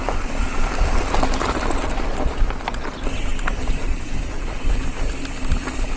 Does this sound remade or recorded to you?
recorded